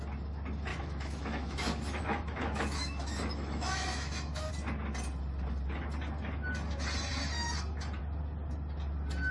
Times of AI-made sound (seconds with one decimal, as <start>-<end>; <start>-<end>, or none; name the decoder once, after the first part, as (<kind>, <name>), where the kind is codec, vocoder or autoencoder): 0.7-4.5 (autoencoder, DAC-VAE)